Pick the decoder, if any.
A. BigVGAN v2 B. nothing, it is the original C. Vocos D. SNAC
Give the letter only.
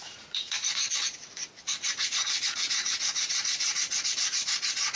C